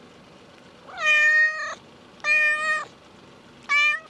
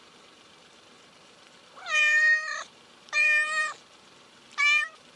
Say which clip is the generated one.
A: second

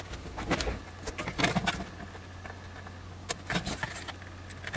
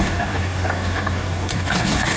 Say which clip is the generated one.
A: second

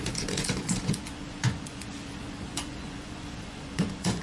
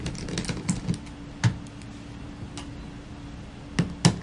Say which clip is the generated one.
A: first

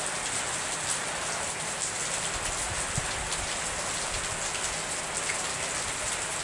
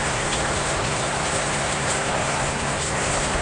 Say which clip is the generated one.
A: second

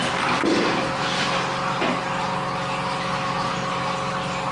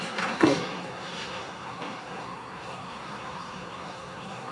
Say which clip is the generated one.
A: second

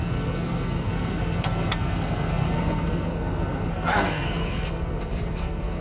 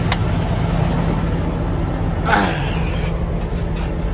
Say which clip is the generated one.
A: first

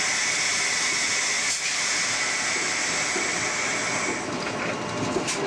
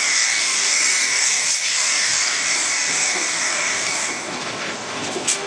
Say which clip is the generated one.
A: second